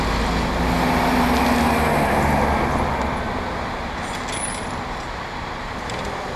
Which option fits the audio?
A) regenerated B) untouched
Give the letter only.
B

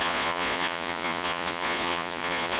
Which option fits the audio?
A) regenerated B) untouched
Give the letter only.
A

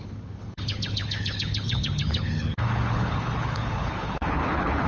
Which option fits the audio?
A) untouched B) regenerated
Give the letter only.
B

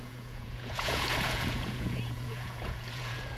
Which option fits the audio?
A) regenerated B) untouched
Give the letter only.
A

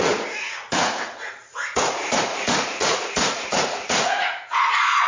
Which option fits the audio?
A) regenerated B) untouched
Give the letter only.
A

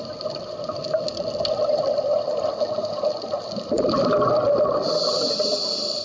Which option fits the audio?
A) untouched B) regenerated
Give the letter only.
A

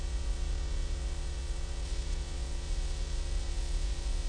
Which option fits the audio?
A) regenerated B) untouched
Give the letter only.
A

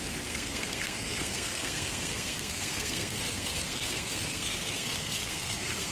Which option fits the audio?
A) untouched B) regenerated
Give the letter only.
B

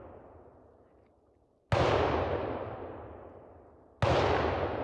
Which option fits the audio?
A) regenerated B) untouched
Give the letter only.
B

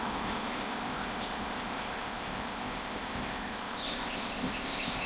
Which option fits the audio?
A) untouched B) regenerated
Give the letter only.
B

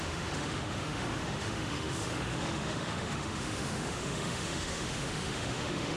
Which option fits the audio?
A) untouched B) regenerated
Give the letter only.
B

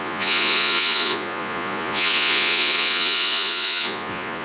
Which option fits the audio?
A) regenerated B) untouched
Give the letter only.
A